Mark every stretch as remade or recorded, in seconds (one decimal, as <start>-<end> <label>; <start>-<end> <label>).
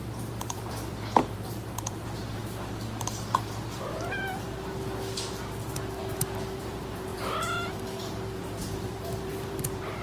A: 0.0-2.4 remade; 2.4-6.6 recorded; 6.6-7.1 remade; 7.1-8.6 recorded; 8.6-10.0 remade